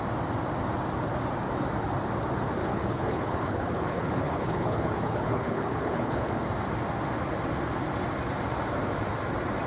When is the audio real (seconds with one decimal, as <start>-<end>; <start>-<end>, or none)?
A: 0.0-2.6; 6.3-9.7